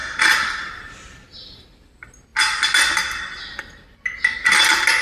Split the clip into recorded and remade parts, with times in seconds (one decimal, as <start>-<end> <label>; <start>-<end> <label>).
0.0-5.0 recorded